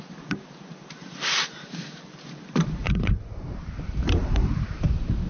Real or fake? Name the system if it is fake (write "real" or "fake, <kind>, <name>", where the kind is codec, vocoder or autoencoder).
fake, vocoder, BigVGAN v2